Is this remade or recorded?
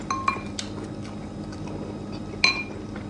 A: recorded